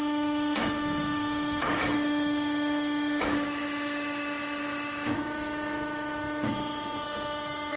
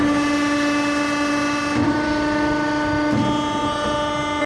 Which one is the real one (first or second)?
second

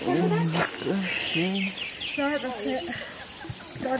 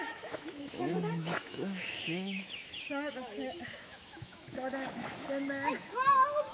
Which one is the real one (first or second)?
first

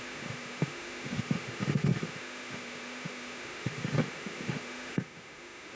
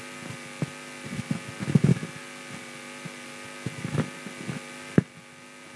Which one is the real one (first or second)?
second